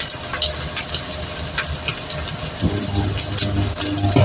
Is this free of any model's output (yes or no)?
yes